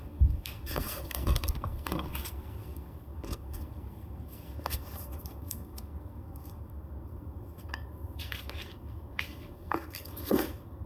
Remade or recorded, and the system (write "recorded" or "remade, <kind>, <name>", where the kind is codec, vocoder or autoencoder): remade, codec, SNAC